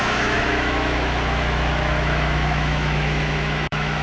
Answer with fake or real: fake